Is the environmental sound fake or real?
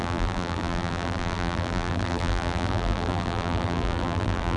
fake